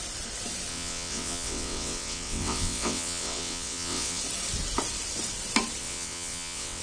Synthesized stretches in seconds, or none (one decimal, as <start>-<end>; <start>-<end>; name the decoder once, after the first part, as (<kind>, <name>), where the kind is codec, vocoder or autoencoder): 0.7-4.2 (vocoder, WaveNeXt); 5.8-6.8